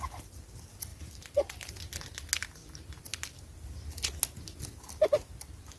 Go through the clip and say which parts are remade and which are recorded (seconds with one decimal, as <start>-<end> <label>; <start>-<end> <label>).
0.0-5.8 recorded